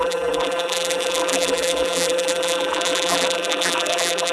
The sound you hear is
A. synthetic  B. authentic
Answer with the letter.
A